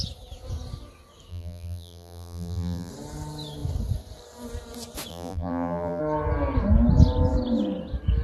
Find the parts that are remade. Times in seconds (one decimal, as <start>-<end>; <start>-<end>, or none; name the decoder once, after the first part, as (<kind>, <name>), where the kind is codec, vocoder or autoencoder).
1.3-2.9 (vocoder, BigVGAN v2); 5.1-6.0